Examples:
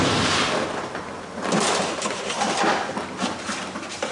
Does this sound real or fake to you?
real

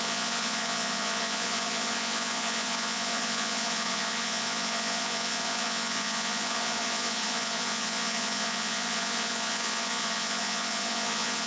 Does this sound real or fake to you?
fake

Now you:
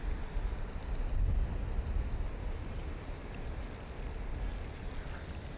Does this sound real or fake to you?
real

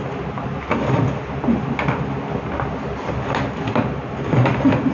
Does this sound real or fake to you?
real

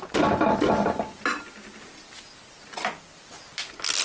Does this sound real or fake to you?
real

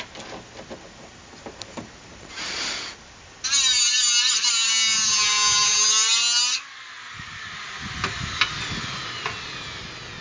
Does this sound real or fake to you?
real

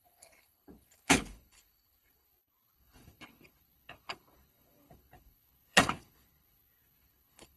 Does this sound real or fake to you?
fake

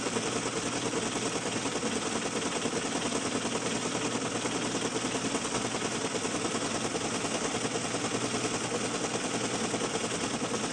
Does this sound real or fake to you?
real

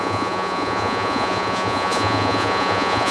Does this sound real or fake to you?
fake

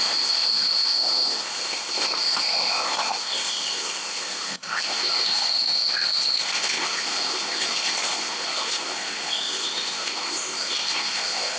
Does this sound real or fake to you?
fake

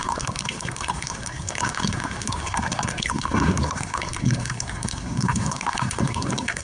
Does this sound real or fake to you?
fake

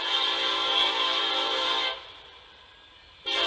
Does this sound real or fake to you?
fake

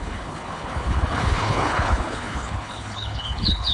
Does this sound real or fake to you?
fake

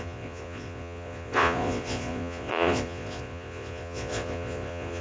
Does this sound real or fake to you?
fake